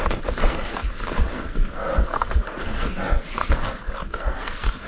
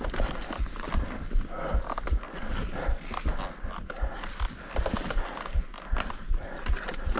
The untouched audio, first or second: second